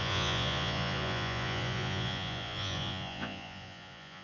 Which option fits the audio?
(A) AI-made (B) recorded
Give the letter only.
A